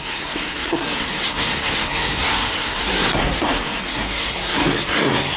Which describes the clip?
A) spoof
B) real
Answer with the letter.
A